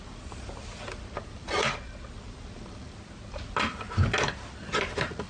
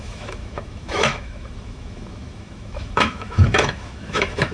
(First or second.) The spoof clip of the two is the second